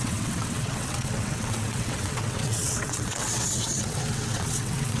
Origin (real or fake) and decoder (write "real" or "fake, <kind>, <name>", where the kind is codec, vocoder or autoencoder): fake, vocoder, WaveNeXt